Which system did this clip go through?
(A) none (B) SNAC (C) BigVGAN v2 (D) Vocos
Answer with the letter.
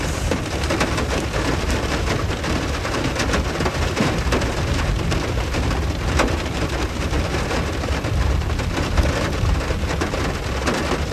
C